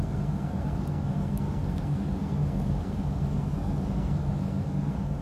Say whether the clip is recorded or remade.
remade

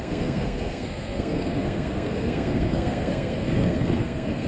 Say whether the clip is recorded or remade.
remade